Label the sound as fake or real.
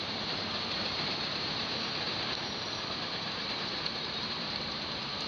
fake